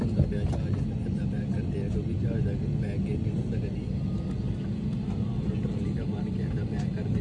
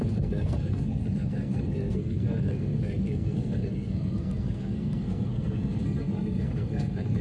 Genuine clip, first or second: first